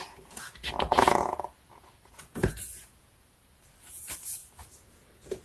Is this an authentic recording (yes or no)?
no